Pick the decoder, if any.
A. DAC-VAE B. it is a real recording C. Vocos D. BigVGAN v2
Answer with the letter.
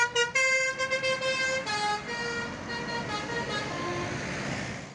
B